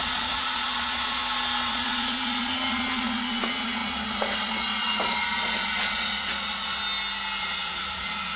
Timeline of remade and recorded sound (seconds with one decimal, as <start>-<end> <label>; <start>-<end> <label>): 0.0-1.2 remade; 1.2-1.7 recorded; 1.7-6.8 remade; 6.8-7.4 recorded; 7.4-8.4 remade